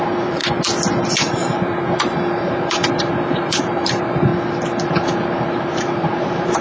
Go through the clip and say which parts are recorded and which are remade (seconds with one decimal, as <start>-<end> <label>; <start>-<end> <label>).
0.0-0.4 remade; 0.4-1.1 recorded; 1.1-4.3 remade; 4.3-4.9 recorded; 4.9-6.6 remade